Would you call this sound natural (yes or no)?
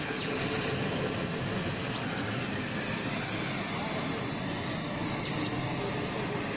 yes